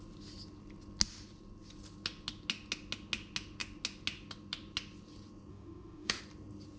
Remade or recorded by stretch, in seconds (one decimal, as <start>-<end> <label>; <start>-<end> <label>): 0.0-5.5 recorded; 5.5-6.2 remade; 6.2-6.8 recorded